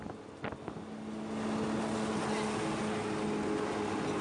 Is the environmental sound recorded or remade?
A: recorded